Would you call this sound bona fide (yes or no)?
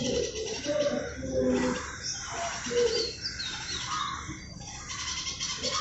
yes